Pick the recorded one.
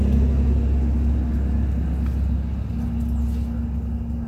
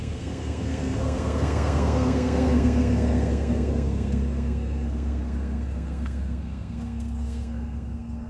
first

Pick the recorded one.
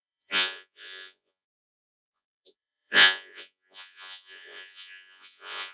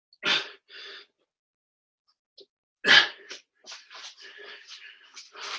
second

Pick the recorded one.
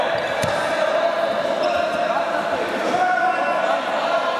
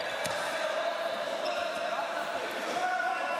first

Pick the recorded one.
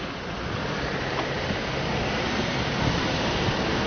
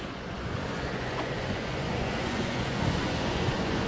first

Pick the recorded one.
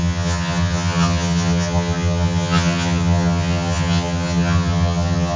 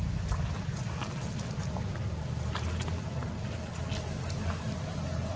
second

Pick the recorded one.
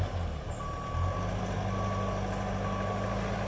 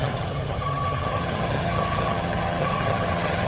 first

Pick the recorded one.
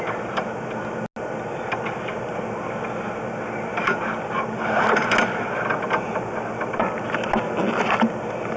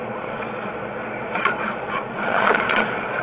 first